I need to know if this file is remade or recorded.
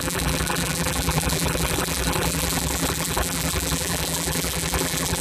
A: remade